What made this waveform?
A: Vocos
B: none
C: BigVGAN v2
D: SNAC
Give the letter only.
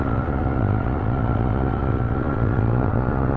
A